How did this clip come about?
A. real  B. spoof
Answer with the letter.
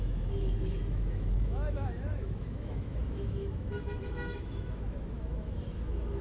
B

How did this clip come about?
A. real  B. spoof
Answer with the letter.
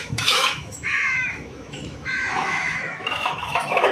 B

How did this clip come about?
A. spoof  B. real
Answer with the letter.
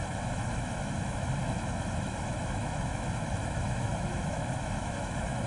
A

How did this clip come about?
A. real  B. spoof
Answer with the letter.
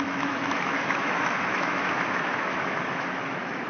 B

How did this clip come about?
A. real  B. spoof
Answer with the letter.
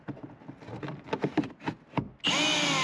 A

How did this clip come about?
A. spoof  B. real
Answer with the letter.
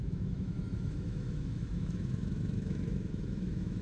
A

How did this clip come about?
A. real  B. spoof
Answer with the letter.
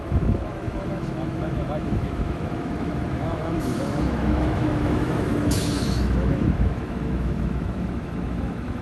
B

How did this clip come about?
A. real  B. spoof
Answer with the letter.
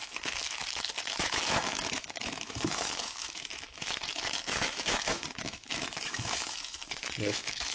B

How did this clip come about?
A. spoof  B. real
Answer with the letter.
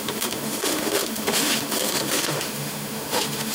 A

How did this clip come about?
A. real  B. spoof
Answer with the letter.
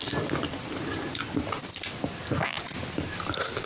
A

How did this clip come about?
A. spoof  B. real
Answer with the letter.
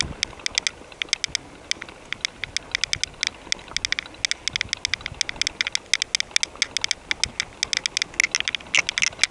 B